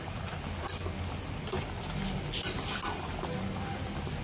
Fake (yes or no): no